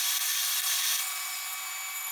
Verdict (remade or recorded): recorded